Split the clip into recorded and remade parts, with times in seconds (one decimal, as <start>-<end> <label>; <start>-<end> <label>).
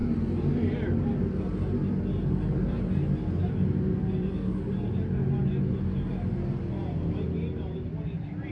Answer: 0.0-8.5 recorded